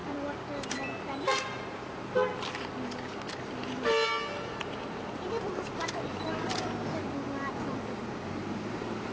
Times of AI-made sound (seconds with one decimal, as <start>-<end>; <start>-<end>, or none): none